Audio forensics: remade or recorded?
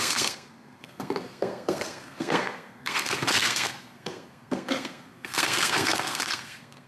remade